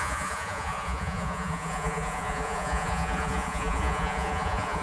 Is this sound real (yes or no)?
no